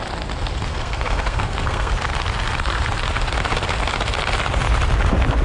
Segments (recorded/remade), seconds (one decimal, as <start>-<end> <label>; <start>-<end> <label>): 0.0-0.7 recorded; 0.7-1.9 remade; 1.9-5.4 recorded

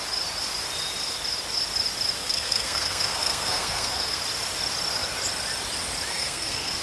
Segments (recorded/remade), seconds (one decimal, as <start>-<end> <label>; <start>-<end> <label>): 0.0-2.2 recorded; 2.2-4.2 remade; 4.2-6.1 recorded; 6.1-6.8 remade

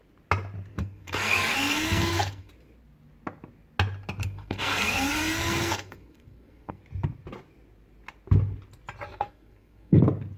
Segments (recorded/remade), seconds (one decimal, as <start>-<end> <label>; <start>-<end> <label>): 0.0-0.7 recorded; 0.7-2.5 remade; 2.5-4.2 recorded; 4.2-6.8 remade; 6.8-9.1 recorded; 9.1-10.0 remade; 10.0-10.4 recorded

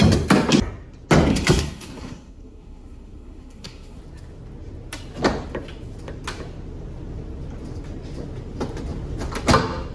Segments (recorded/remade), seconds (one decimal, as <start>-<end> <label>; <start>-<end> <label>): 0.0-1.3 recorded; 1.3-4.0 remade; 4.0-9.9 recorded

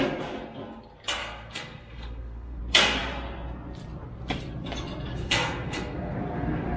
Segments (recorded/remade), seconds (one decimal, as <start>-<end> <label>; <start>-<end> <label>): 0.0-1.2 recorded; 1.2-2.6 remade; 2.6-5.1 recorded; 5.1-6.2 remade; 6.2-6.8 recorded

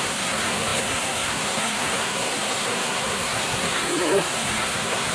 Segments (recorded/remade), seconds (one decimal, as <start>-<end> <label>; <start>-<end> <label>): 0.0-5.1 remade

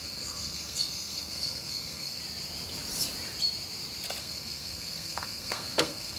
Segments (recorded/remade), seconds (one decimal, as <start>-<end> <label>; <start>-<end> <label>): 0.0-2.2 remade; 2.2-4.2 recorded; 4.2-6.2 remade

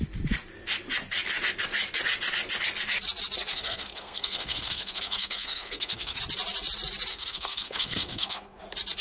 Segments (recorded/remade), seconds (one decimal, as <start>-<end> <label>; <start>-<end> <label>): 0.0-3.5 recorded; 3.5-6.2 remade; 6.2-7.1 recorded; 7.1-8.6 remade; 8.6-9.0 recorded